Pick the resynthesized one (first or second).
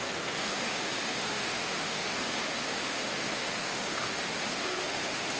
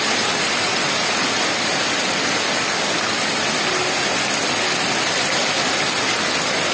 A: first